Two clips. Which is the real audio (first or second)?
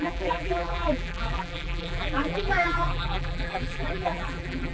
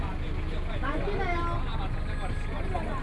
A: second